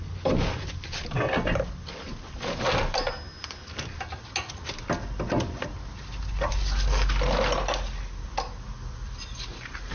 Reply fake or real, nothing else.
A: real